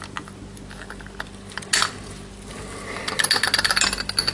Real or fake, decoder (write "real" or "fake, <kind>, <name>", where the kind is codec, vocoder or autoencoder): real